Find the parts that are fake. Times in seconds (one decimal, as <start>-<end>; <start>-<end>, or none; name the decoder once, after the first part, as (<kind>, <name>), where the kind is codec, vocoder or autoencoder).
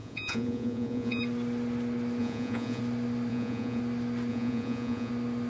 0.0-1.2 (vocoder, Vocos); 2.2-2.8; 3.3-3.8; 4.3-5.1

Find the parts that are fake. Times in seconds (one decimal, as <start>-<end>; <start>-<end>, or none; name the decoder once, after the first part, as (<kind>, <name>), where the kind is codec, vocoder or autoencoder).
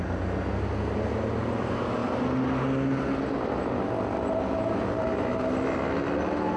none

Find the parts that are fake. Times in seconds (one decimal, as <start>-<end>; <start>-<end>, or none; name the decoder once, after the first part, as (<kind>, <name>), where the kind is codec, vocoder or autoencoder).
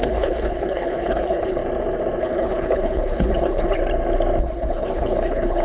0.0-1.6 (codec, HILCodec); 2.2-3.8; 4.4-5.6